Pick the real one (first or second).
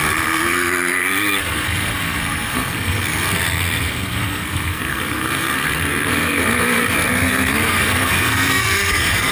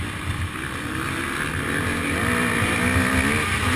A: second